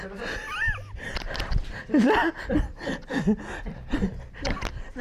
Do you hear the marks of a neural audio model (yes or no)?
no